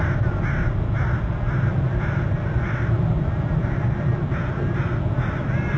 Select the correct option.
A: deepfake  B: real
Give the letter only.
B